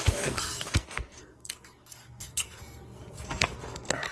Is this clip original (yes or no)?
no